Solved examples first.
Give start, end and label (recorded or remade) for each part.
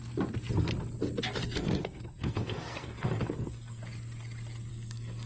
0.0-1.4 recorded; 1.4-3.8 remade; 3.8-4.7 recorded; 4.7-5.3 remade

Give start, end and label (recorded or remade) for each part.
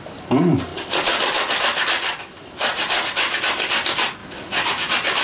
0.0-5.2 recorded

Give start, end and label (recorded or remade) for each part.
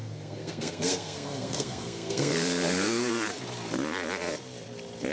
0.0-3.1 remade; 3.1-5.1 recorded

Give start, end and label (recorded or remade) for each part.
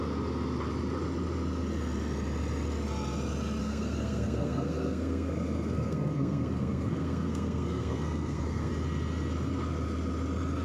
0.0-3.6 recorded; 3.6-8.7 remade; 8.7-10.6 recorded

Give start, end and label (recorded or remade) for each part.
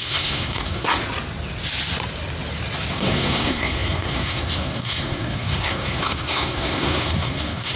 0.0-0.9 remade; 0.9-2.9 recorded; 2.9-7.8 remade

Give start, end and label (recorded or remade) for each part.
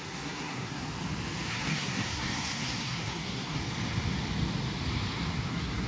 0.0-0.8 remade; 0.8-1.5 recorded; 1.5-3.6 remade; 3.6-5.5 recorded; 5.5-5.9 remade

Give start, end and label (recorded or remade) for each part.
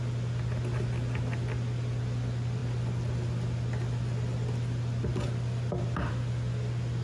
0.0-7.0 recorded